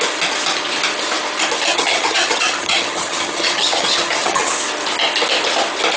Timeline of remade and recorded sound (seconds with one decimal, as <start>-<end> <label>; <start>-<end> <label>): 0.0-1.7 recorded; 1.7-4.5 remade; 4.5-6.0 recorded